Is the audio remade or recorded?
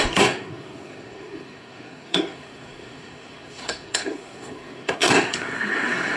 remade